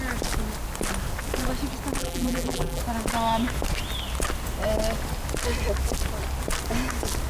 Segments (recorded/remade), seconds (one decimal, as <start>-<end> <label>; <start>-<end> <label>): 0.0-2.0 recorded; 2.0-2.8 remade; 2.8-7.3 recorded